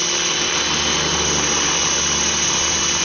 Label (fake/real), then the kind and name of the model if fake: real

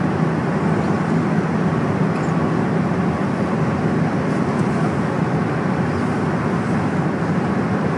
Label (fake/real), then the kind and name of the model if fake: real